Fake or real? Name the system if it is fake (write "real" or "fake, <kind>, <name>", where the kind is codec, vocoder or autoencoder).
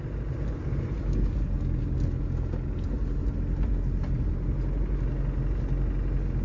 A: real